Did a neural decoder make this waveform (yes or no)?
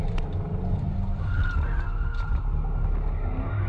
no